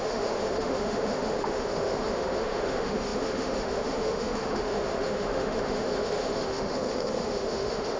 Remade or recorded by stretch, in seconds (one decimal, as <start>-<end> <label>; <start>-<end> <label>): 0.0-8.0 remade